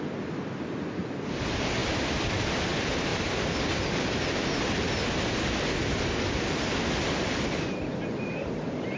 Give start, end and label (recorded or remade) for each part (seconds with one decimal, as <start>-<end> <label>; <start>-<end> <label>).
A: 0.0-9.0 recorded